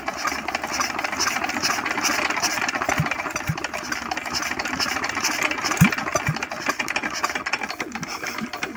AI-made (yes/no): no